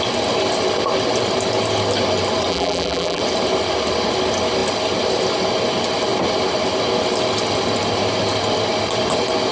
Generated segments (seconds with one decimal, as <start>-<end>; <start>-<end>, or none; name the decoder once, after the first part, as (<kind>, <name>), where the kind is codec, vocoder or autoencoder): 2.5-3.2 (vocoder, BigVGAN v2)